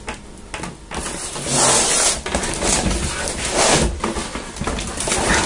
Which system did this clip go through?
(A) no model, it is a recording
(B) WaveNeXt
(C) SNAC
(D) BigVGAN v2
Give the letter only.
A